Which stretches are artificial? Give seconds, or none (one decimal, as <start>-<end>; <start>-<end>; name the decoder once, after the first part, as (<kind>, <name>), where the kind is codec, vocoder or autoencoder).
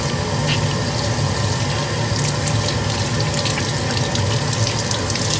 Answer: none